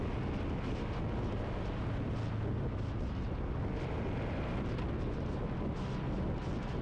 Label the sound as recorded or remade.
recorded